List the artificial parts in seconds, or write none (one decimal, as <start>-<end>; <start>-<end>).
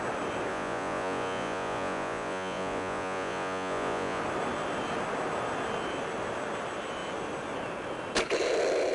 0.5-4.2